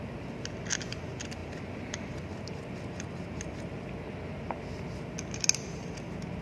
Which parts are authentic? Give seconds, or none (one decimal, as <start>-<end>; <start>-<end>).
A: 0.0-6.4